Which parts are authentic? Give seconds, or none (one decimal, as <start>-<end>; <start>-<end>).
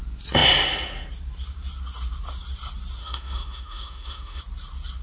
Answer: 0.0-3.0; 4.4-5.0